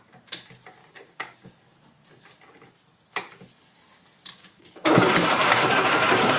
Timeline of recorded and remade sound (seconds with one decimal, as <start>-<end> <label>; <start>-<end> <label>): 0.0-0.8 recorded; 0.8-1.5 remade; 1.5-4.4 recorded; 4.4-5.0 remade; 5.0-5.4 recorded; 5.4-6.4 remade